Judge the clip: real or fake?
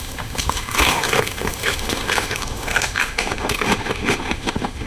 fake